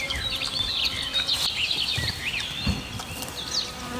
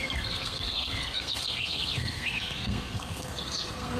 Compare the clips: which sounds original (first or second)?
first